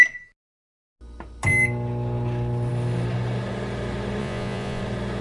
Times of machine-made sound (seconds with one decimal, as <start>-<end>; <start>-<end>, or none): 4.2-4.8